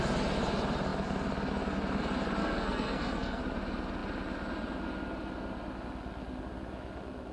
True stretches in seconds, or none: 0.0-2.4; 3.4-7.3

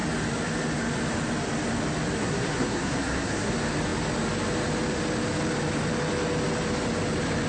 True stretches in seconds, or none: 0.0-2.2; 3.5-7.5

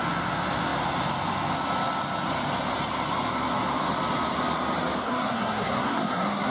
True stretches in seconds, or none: 0.0-5.0

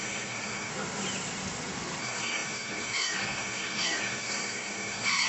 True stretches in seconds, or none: 0.7-2.0

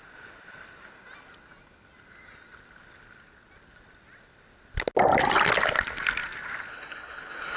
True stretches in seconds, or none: 0.0-6.7

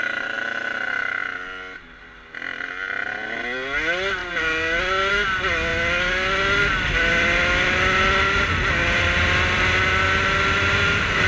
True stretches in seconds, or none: 0.0-11.3

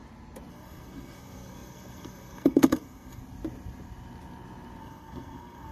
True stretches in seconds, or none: 0.0-0.5; 3.2-4.8